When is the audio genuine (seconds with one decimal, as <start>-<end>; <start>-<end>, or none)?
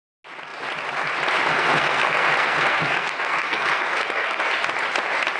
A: 0.0-1.5; 4.5-5.4